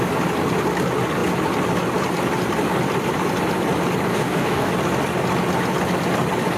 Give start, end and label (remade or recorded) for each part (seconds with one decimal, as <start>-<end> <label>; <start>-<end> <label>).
0.0-4.1 recorded; 4.1-4.7 remade; 4.7-6.6 recorded